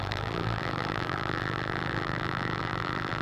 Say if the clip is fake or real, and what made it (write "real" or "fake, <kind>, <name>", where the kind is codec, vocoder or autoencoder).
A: fake, vocoder, BigVGAN v2